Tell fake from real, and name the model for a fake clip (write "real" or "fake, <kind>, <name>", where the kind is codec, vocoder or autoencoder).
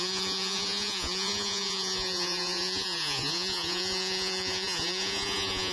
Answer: fake, vocoder, Vocos